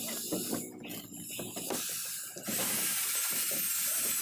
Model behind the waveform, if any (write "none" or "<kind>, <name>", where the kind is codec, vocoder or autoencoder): none